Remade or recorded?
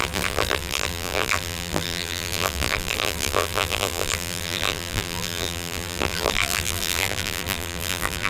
remade